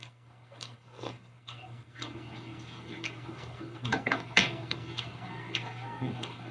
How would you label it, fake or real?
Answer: fake